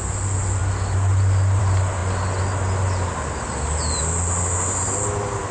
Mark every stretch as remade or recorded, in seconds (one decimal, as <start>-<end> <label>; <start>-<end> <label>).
0.0-5.5 recorded